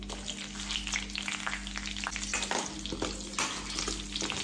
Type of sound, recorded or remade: recorded